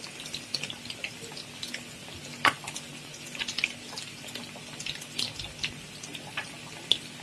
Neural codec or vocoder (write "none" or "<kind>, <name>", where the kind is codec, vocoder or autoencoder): none